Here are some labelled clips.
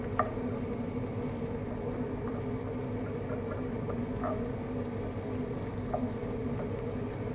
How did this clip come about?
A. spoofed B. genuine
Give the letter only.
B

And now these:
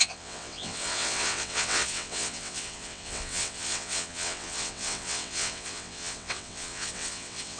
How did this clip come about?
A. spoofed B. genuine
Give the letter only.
A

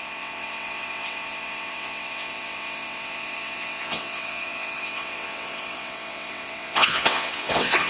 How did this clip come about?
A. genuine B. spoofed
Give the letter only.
B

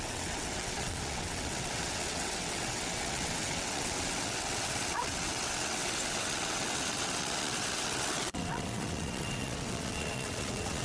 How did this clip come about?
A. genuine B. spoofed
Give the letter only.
B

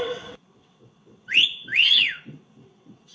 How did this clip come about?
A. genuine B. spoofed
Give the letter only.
B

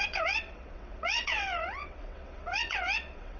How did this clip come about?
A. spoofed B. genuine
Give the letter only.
A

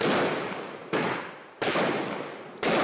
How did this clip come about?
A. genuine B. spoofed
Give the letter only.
A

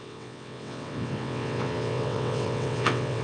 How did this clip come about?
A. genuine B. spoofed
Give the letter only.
B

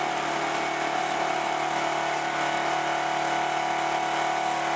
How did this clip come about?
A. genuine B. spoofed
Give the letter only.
A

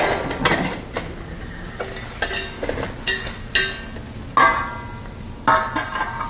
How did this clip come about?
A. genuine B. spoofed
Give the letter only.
A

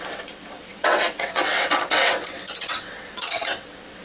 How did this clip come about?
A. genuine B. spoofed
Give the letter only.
B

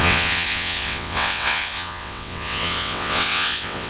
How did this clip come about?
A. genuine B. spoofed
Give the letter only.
B